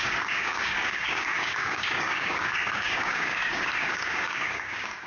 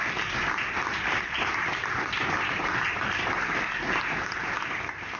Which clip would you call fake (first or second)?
first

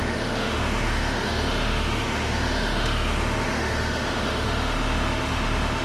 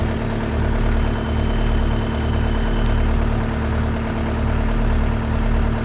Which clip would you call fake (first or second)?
first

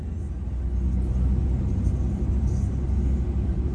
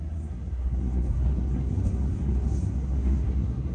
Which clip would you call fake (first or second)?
second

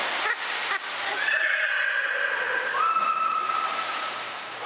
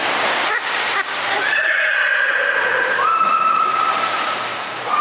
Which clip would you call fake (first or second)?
second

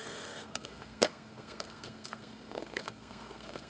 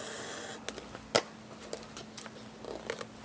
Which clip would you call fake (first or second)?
first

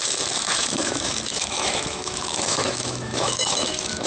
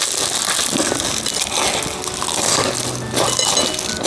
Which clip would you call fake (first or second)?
first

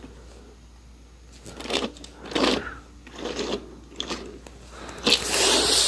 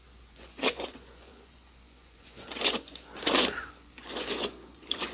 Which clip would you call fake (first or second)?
second